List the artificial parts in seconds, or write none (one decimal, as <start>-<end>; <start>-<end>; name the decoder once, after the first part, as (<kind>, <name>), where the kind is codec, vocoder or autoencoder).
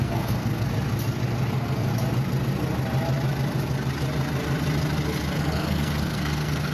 0.0-0.7 (codec, SNAC); 1.5-1.9; 5.4-6.7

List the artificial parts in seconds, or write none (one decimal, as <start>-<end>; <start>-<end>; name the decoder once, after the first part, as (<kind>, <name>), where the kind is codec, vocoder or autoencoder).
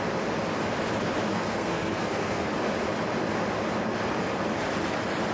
1.3-2.5 (codec, SNAC)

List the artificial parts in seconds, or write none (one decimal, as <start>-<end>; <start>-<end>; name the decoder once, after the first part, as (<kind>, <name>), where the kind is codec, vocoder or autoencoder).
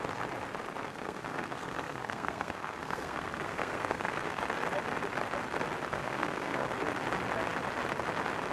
0.9-4.4 (codec, SNAC); 5.9-6.7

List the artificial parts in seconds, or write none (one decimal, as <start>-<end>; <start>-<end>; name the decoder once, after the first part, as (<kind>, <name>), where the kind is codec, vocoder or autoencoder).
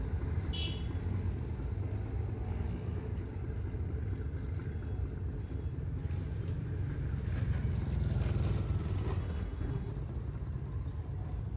9.2-9.9 (codec, SNAC)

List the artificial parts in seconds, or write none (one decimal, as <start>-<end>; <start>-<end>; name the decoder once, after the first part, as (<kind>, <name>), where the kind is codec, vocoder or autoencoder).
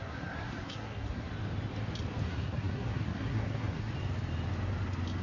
0.0-1.3 (codec, SNAC); 2.2-3.9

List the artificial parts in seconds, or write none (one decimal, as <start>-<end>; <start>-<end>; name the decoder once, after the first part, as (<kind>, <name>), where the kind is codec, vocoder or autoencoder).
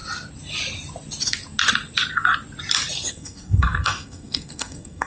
3.1-5.1 (codec, SNAC)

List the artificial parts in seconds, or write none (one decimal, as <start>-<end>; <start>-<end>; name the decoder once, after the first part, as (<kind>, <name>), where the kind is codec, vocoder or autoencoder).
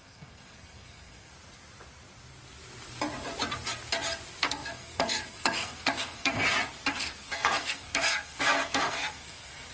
0.0-1.3 (codec, SNAC); 4.4-6.4; 6.9-9.7